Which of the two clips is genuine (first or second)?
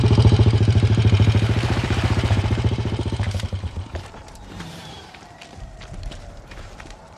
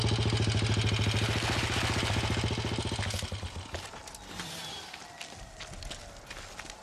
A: second